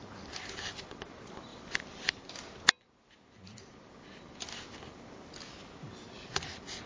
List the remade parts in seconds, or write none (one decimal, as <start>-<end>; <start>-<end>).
none